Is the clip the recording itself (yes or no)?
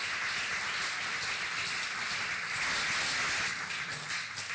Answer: yes